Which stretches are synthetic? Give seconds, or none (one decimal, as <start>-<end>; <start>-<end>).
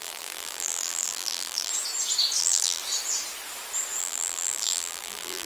0.0-1.7; 2.4-2.8; 4.0-5.5